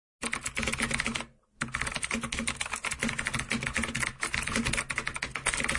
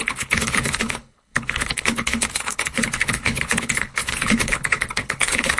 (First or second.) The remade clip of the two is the second